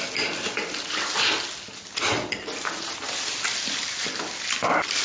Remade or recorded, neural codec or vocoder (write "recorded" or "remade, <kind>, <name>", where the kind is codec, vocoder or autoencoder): recorded